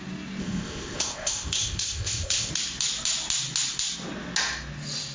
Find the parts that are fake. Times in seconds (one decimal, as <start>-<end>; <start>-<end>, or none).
0.4-2.5